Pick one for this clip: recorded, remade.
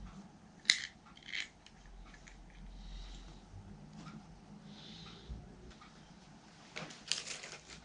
recorded